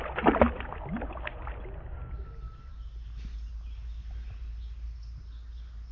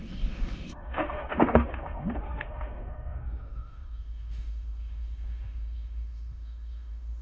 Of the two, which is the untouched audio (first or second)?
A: first